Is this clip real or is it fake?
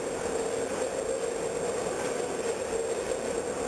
real